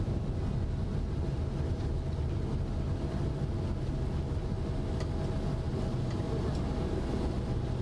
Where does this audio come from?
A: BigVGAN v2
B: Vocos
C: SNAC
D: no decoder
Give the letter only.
D